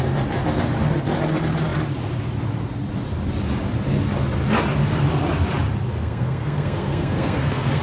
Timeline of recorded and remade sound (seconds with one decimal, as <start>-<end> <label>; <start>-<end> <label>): 0.0-6.0 recorded; 6.0-7.8 remade